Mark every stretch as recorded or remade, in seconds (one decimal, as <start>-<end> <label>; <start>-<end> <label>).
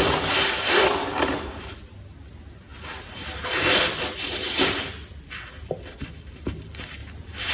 0.0-7.5 recorded